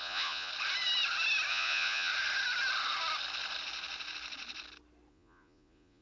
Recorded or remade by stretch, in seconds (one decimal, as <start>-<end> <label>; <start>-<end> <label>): 0.0-0.5 remade; 0.5-1.5 recorded; 1.5-2.1 remade; 2.1-5.1 recorded; 5.1-6.0 remade